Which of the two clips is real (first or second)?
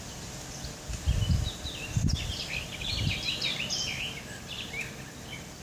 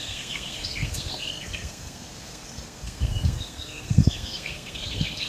first